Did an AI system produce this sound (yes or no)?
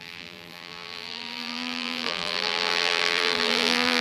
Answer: yes